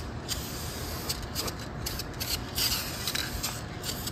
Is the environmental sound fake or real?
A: real